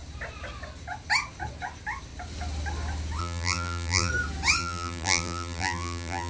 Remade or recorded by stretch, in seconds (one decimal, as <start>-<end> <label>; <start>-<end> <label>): 0.0-3.2 recorded; 3.2-4.1 remade; 4.1-4.6 recorded; 4.6-6.3 remade